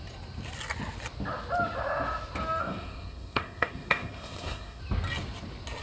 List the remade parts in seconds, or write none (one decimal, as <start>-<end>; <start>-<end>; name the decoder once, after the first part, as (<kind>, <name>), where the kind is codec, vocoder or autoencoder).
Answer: 2.6-4.8 (codec, SNAC)

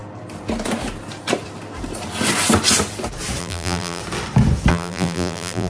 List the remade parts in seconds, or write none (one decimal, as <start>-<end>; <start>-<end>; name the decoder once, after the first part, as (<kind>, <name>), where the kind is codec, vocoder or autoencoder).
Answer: 3.4-4.0 (vocoder, BigVGAN v2); 4.7-5.7

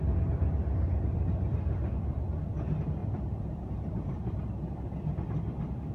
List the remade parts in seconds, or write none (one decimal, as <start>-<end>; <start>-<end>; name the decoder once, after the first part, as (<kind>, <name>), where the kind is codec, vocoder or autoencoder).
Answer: 3.0-4.4 (vocoder, BigVGAN v2)

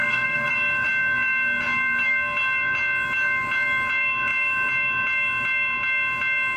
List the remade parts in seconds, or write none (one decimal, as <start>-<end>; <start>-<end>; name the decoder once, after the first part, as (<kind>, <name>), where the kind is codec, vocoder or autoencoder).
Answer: 0.0-0.5 (codec, SNAC)

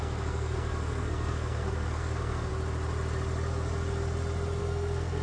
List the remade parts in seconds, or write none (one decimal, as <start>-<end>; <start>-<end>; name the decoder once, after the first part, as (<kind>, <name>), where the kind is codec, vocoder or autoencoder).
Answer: 0.0-2.5 (codec, SNAC); 4.6-5.2

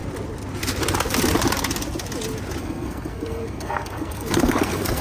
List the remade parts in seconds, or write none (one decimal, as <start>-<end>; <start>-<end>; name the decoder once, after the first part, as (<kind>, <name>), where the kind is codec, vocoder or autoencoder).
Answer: 2.6-5.0 (codec, SNAC)